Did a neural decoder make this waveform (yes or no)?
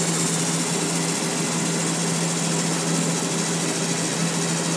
no